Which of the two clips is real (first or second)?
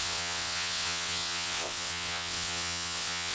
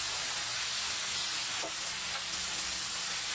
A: second